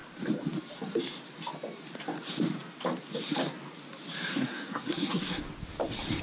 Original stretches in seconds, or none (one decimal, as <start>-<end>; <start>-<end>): 0.0-4.3; 5.4-6.2